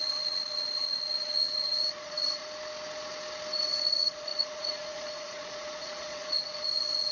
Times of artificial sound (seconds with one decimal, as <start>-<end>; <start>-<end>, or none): 0.0-2.4; 3.7-7.1